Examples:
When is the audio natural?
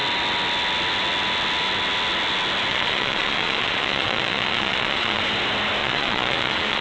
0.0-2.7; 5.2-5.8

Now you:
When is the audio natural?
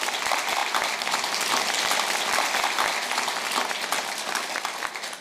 0.0-5.2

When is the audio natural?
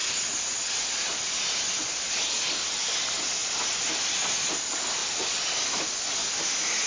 0.0-6.9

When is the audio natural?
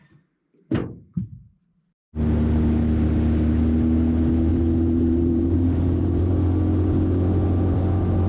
0.0-0.8; 1.7-4.5; 6.3-8.3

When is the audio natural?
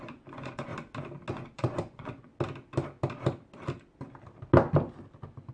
0.7-1.3; 2.3-5.5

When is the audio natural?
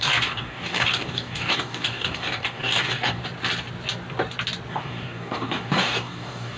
3.2-4.7